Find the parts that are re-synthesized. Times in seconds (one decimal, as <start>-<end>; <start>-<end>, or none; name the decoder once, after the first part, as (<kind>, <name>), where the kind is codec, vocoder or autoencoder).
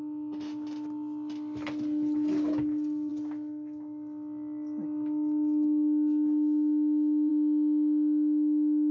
none